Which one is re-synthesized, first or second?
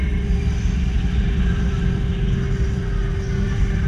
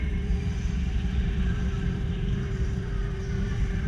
second